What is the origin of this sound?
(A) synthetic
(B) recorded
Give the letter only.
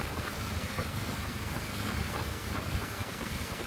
A